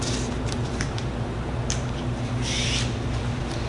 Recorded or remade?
recorded